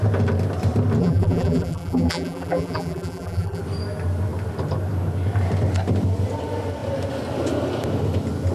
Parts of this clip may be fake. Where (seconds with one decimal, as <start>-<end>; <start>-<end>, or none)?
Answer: 1.0-3.6